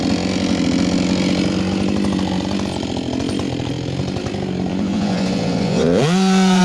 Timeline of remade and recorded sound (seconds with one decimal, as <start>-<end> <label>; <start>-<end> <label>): 0.0-4.7 recorded; 4.7-6.6 remade